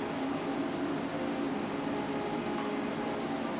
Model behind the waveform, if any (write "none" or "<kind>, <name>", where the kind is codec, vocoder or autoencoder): none